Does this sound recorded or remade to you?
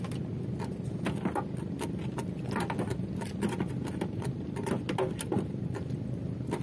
recorded